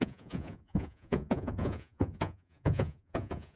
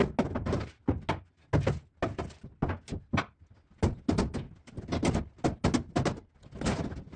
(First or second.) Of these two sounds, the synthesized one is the first